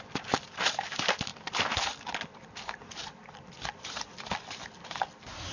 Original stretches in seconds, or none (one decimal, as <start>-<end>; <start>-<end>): 0.0-1.3; 4.6-5.5